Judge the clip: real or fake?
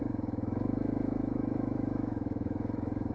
fake